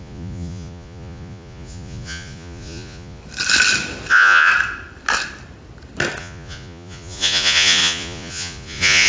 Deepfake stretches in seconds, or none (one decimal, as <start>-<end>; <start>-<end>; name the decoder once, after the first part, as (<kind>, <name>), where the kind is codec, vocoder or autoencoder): 0.0-3.2 (vocoder, Vocos); 4.1-4.5; 6.2-9.1